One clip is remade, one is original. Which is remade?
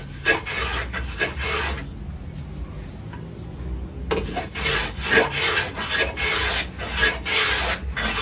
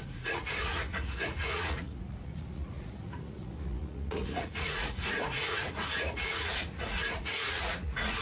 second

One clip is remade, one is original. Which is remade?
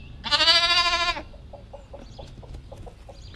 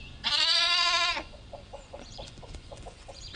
second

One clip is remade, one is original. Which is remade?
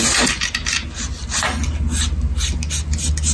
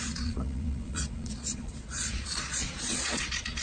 second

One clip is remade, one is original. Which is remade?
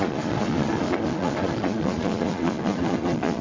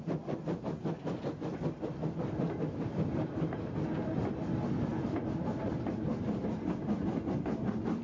first